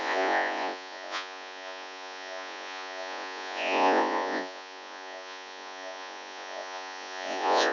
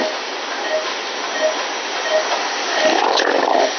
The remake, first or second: first